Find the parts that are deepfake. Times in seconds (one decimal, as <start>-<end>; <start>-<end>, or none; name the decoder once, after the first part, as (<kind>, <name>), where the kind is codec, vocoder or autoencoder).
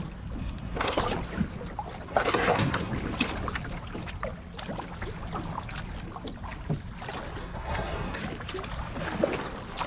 0.4-1.0 (codec, SNAC); 2.1-2.9; 7.4-8.2